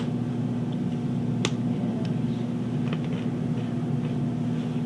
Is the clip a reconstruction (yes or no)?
no